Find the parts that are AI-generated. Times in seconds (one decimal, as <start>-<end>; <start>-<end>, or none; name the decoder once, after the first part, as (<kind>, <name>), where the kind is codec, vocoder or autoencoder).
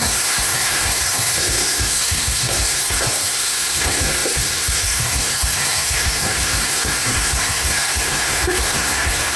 0.0-9.4 (codec, SNAC)